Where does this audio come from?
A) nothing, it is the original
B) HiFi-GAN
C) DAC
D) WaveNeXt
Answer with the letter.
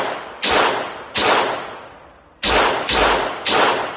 A